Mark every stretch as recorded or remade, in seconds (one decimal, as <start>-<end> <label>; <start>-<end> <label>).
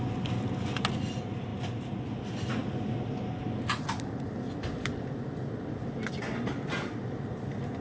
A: 0.0-7.8 recorded